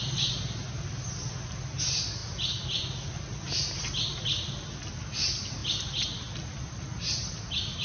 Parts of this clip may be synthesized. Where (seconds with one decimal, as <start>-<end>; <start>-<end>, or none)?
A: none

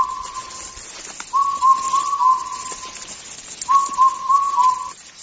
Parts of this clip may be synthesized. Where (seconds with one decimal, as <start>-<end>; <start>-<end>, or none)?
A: none

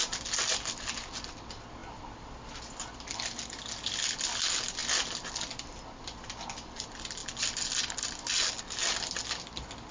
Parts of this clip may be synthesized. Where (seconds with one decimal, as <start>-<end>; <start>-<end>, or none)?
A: none

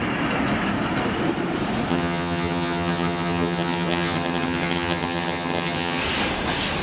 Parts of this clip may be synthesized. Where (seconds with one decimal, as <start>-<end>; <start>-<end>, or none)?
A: 1.9-6.0

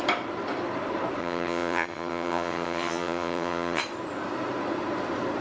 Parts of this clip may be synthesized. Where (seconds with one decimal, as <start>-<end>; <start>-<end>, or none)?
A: 1.2-3.8

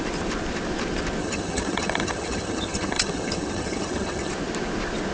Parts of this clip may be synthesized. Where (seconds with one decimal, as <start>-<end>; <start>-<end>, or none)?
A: 1.2-4.3